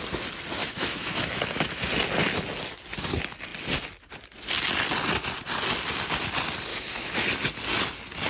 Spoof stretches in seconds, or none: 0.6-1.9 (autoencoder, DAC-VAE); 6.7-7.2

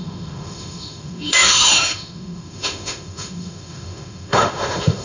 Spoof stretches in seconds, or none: 0.0-5.0 (autoencoder, DAC-VAE)

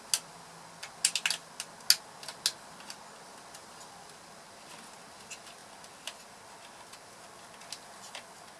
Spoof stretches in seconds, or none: none

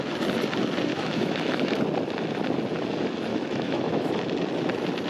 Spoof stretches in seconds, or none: 0.9-1.8 (autoencoder, DAC-VAE); 3.3-4.1

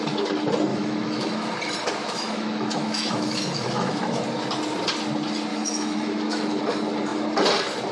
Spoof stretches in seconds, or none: 0.7-1.5 (autoencoder, DAC-VAE); 2.0-4.2; 5.5-6.6